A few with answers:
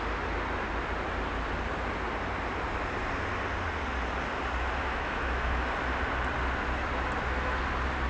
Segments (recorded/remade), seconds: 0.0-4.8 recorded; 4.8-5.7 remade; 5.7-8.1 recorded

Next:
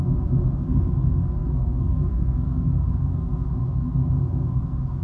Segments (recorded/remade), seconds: 0.0-5.0 remade

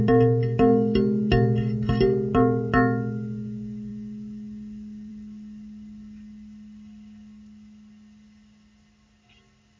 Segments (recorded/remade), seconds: 0.0-9.8 recorded

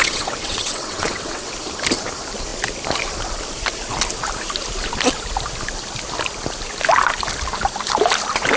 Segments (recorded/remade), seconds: 0.0-1.5 remade; 1.5-8.6 recorded